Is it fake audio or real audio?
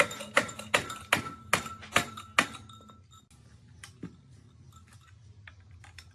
real